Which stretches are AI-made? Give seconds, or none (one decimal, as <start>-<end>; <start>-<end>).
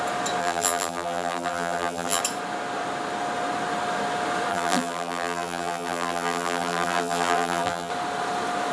0.4-2.2; 4.5-7.9